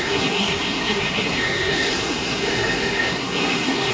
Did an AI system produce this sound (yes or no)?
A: yes